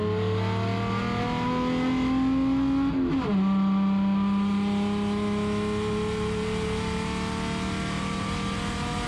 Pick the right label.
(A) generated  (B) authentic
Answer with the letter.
B